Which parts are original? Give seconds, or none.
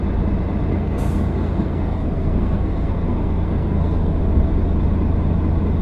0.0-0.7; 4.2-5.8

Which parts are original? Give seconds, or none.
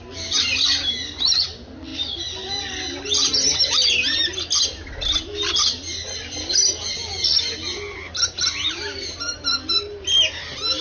0.0-10.8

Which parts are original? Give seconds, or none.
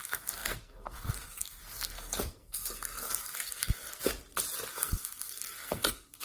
4.1-4.7